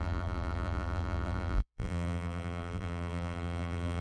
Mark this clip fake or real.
fake